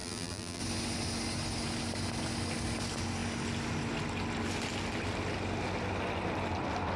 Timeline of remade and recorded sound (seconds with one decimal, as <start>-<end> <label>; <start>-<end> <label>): 0.0-0.6 remade; 0.6-7.0 recorded